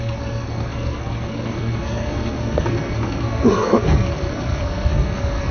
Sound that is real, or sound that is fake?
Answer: fake